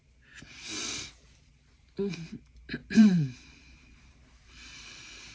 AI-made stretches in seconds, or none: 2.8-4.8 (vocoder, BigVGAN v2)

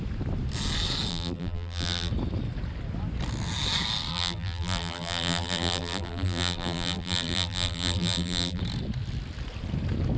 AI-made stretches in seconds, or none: 1.1-2.1 (vocoder, BigVGAN v2); 4.1-8.6

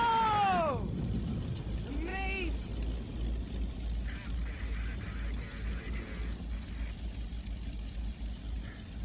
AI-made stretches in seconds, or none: none

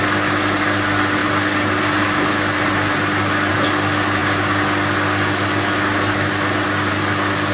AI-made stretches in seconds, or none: none

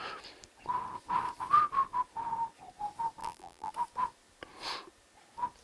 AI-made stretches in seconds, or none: 3.2-3.7 (vocoder, BigVGAN v2)

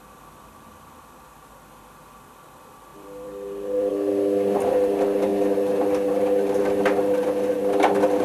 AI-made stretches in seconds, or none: 2.9-3.9 (vocoder, BigVGAN v2)

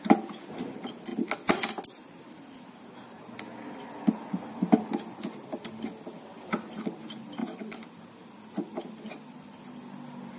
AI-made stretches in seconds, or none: 7.4-7.9 (vocoder, BigVGAN v2)